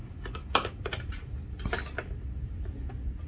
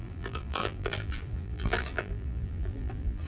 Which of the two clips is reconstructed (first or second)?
second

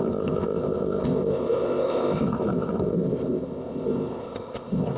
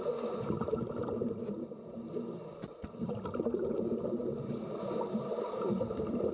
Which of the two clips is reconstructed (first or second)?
first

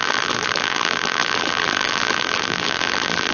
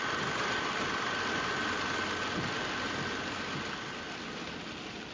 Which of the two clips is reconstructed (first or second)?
first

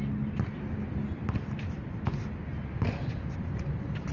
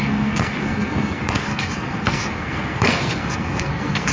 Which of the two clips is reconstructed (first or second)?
second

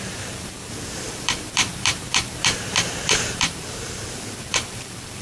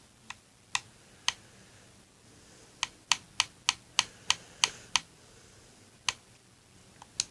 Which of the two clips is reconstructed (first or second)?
first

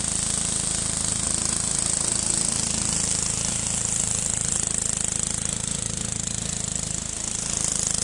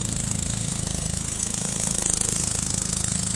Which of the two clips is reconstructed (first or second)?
second